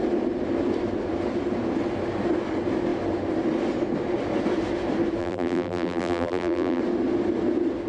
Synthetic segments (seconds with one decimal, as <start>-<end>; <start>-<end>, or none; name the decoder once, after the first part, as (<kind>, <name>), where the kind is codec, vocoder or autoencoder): 5.2-6.8 (vocoder, BigVGAN v2)